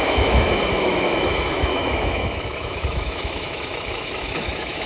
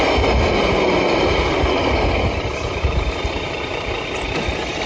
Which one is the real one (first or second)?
second